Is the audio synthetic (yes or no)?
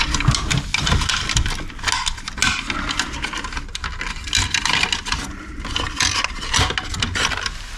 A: no